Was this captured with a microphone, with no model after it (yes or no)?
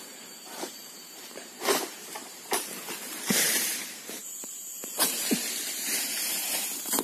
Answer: no